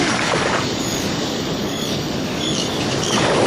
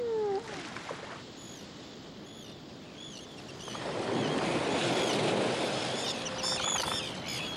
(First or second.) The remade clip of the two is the first